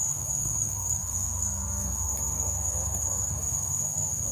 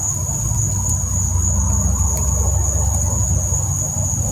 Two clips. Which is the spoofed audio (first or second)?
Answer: first